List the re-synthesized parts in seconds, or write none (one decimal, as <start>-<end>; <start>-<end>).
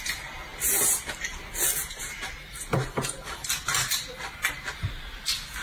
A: none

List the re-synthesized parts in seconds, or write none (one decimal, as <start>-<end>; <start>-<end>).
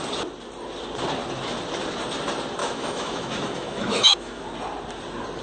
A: 2.6-4.4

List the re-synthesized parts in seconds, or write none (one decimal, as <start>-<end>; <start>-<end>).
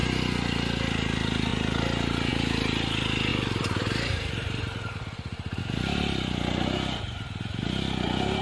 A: 3.3-5.6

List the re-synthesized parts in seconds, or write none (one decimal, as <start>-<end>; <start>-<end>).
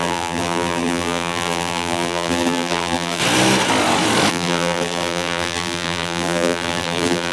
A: 0.0-3.2; 4.3-7.3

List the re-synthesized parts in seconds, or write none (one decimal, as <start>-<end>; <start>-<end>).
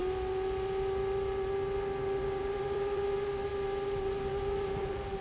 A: 2.2-3.5; 4.6-5.2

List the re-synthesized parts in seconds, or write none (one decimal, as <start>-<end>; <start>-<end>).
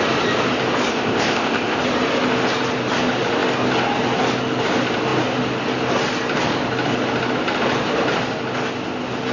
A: 0.9-1.8